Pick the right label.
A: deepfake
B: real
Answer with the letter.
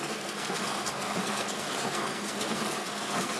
A